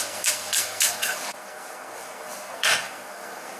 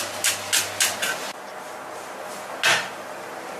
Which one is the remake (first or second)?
first